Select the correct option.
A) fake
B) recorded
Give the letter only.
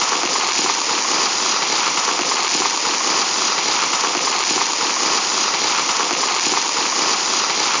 B